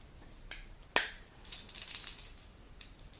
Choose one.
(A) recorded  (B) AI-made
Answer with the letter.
A